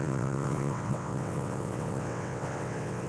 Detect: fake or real fake